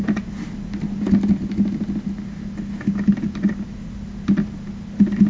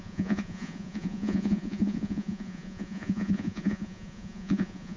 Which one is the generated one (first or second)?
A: second